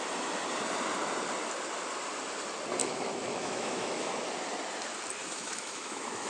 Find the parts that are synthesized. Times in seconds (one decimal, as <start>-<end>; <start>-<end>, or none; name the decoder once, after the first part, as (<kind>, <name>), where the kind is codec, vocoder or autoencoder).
2.8-4.1 (autoencoder, DAC-VAE); 5.2-6.3